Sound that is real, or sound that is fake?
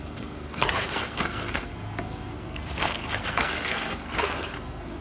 fake